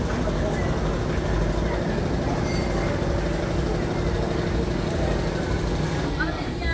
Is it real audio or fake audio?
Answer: real